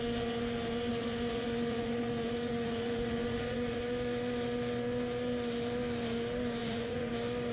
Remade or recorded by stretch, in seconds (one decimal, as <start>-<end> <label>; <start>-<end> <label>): 0.0-0.9 recorded; 0.9-3.8 remade; 3.8-6.6 recorded; 6.6-7.1 remade; 7.1-7.5 recorded